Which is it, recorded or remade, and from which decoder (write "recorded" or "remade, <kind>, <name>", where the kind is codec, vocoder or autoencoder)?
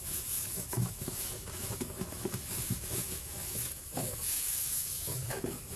remade, autoencoder, DAC-VAE